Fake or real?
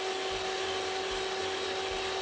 real